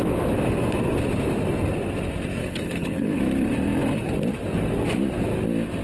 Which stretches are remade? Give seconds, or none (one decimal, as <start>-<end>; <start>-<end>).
2.4-3.2